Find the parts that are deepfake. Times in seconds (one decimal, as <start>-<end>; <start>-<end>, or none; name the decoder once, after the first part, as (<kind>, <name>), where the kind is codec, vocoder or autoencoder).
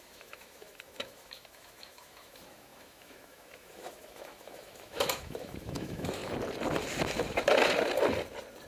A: 0.0-6.2 (autoencoder, DAC-VAE)